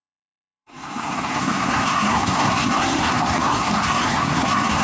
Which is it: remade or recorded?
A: remade